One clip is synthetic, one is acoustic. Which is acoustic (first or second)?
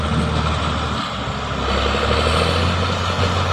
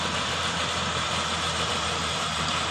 first